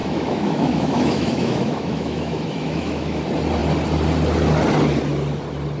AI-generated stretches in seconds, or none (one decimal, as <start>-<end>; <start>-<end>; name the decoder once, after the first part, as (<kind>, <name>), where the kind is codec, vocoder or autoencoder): 0.0-3.2 (autoencoder, DAC-VAE)